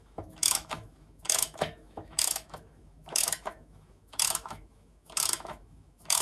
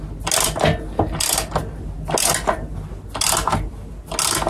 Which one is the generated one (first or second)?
first